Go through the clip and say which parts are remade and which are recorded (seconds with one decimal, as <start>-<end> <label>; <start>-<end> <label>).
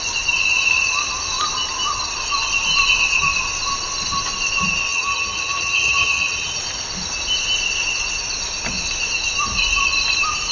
0.0-4.9 recorded; 4.9-6.6 remade; 6.6-10.5 recorded